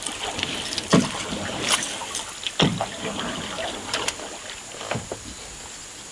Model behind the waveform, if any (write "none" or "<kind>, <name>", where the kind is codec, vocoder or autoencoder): none